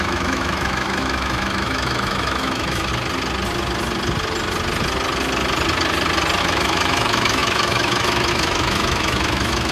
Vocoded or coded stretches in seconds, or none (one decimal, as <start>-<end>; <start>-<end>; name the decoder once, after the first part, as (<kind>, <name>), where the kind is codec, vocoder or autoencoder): 0.0-2.9 (autoencoder, DAC-VAE); 6.4-9.7